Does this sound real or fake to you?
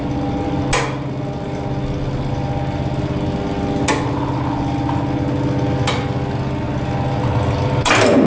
real